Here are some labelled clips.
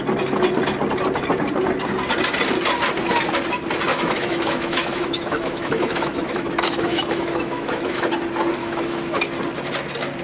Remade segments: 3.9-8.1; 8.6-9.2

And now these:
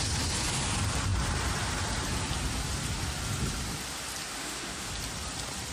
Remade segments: 4.4-4.9

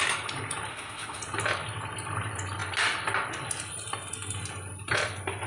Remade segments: 0.7-1.2

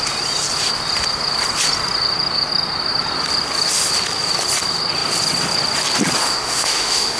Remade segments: 6.2-7.2

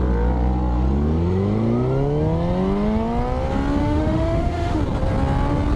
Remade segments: 3.8-4.8